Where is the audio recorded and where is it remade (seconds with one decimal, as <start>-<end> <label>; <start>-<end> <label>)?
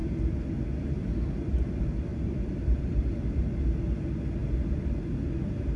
0.0-2.1 recorded; 2.1-3.0 remade; 3.0-5.8 recorded